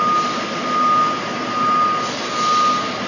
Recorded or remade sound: recorded